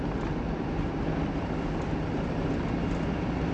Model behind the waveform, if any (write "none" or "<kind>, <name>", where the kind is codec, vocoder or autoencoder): none